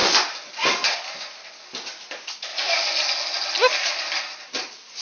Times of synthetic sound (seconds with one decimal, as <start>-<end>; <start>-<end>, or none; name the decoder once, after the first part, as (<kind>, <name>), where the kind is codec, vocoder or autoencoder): none